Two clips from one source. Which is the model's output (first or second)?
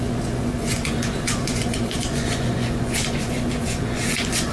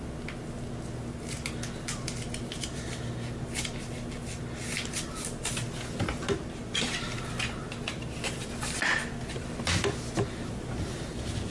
first